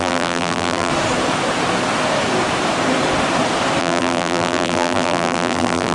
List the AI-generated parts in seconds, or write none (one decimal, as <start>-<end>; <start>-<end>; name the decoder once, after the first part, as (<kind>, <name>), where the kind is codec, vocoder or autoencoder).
0.0-0.9 (vocoder, BigVGAN v2); 3.8-5.9